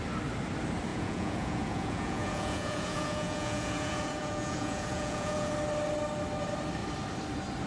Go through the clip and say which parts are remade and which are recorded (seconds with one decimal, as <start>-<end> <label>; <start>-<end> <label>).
0.0-0.9 recorded; 0.9-5.5 remade; 5.5-7.7 recorded